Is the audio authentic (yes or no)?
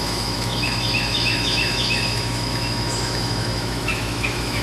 no